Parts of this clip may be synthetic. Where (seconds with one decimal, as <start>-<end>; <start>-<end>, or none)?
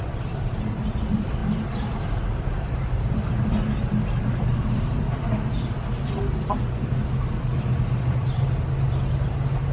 none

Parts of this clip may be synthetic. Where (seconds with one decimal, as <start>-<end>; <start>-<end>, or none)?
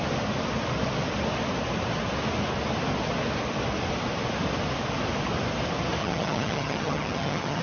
6.0-7.6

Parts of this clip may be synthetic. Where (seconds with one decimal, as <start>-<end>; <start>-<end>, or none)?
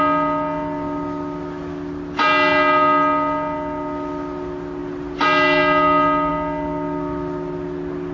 none